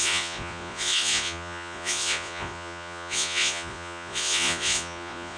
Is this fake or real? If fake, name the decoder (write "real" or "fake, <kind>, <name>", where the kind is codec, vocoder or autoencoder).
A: fake, vocoder, Vocos